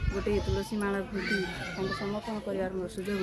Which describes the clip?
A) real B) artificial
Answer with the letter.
A